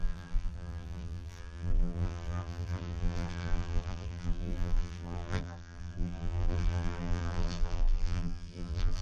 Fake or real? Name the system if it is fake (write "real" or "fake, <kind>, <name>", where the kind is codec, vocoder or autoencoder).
fake, vocoder, BigVGAN v2